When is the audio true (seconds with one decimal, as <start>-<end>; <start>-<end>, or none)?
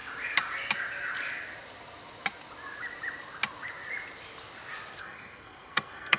0.0-5.0